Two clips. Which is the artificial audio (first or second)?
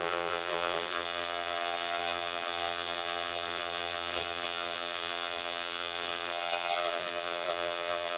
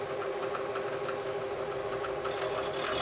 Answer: first